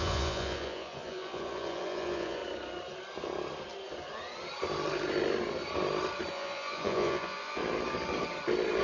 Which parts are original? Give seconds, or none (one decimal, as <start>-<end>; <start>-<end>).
2.4-6.3; 7.6-8.8